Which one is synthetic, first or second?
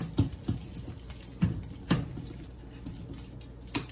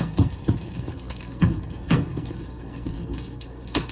second